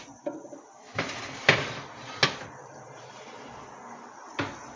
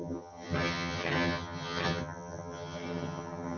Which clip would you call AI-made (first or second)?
second